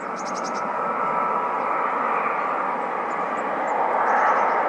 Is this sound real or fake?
real